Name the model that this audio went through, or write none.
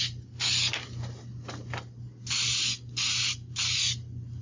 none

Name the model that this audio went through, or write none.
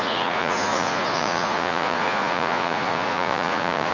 vocoder, Vocos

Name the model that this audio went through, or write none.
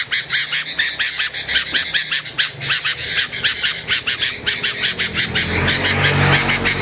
none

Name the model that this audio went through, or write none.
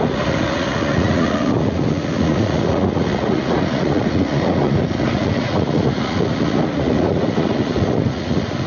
vocoder, Vocos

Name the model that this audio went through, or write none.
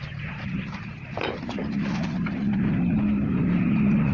none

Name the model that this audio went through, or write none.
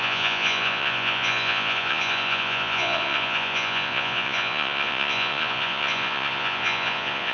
vocoder, Vocos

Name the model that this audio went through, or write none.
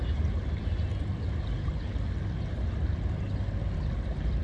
none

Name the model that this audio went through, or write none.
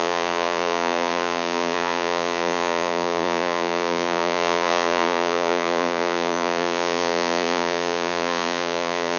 vocoder, Vocos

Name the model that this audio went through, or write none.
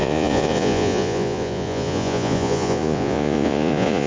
vocoder, Vocos